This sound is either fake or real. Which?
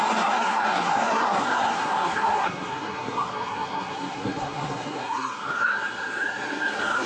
fake